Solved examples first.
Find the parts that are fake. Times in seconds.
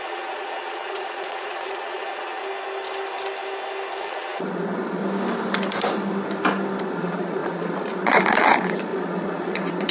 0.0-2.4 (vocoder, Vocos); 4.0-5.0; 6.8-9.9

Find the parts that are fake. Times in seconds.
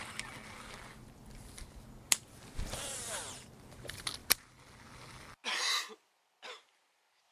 none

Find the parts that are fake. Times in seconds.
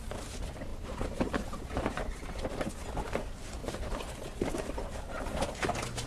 0.7-2.5 (vocoder, BigVGAN v2); 3.6-5.0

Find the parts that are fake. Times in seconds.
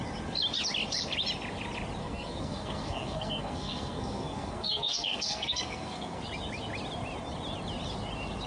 2.0-6.2 (codec, SNAC)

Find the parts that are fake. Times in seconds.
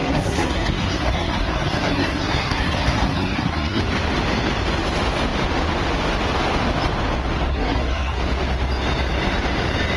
0.0-3.8 (codec, SNAC); 7.5-8.2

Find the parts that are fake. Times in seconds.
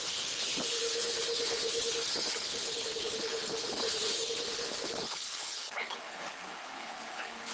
0.0-7.5 (codec, HILCodec)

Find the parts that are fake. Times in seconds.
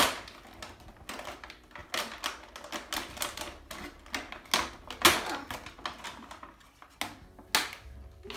none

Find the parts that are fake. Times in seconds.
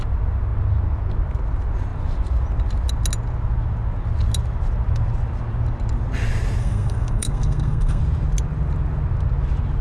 6.6-8.0 (codec, SNAC)